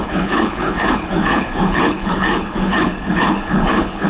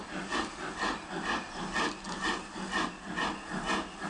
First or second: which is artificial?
first